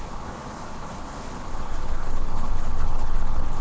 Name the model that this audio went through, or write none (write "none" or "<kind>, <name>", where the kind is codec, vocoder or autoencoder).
codec, HILCodec